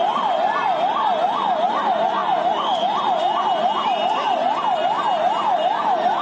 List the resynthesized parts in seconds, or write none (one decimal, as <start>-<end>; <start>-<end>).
none